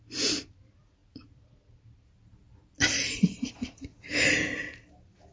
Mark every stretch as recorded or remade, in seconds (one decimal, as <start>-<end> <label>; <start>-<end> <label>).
0.0-3.9 remade; 3.9-4.6 recorded; 4.6-5.3 remade